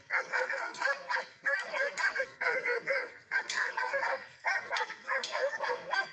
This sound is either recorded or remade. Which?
remade